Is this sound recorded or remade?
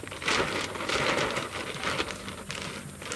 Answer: recorded